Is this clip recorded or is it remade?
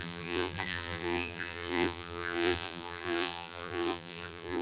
remade